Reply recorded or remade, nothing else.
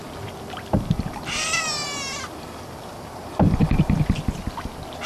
recorded